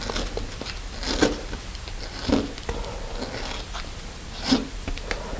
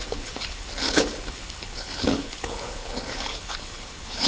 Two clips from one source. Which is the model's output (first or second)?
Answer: second